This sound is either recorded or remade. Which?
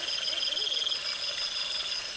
recorded